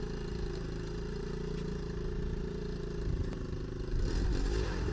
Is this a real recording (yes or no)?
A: no